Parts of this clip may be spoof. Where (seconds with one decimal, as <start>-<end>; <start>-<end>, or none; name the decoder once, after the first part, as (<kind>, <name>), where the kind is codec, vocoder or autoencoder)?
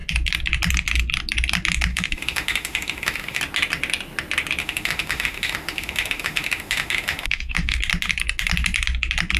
1.9-3.4 (autoencoder, DAC-VAE); 4.6-7.8